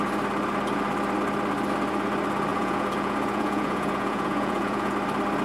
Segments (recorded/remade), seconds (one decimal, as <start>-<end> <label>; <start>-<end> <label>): 0.0-2.5 recorded; 2.5-4.9 remade; 4.9-5.4 recorded